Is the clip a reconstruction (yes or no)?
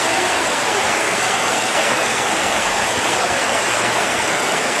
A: yes